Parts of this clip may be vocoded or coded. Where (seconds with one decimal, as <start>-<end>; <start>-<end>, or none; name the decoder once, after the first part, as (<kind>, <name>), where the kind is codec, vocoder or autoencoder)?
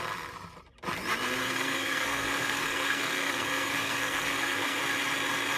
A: 1.4-4.8 (codec, SNAC)